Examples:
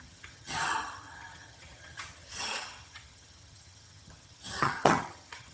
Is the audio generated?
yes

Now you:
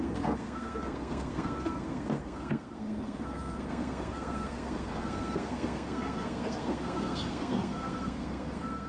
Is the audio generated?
yes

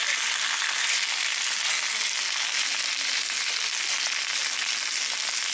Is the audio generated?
no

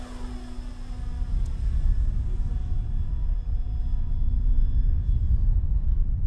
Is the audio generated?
no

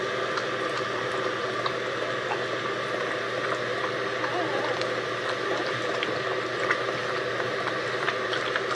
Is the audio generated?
no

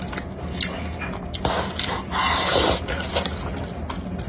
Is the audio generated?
no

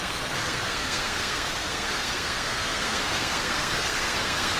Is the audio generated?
yes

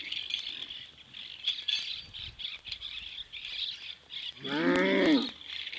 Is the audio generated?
no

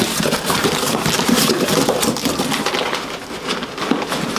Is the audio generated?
no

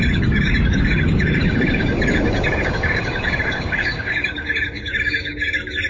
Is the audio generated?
yes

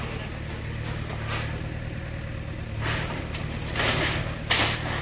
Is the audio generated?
no